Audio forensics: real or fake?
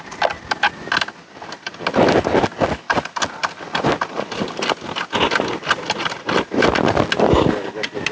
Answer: real